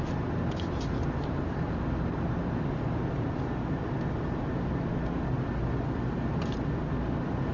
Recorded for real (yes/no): yes